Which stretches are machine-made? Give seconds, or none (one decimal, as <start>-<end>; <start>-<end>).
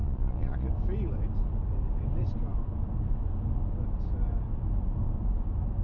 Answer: 0.0-0.7